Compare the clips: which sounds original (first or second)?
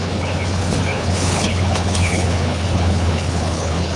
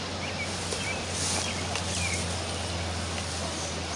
second